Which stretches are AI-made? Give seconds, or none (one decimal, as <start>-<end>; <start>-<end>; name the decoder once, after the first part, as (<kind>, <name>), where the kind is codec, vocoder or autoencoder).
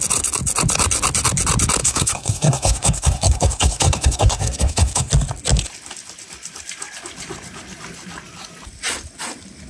1.8-5.1 (codec, SNAC)